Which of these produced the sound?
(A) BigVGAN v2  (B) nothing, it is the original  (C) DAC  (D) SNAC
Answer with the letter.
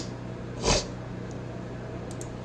B